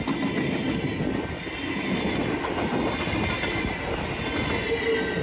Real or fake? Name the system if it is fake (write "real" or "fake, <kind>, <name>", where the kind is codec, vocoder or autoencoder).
real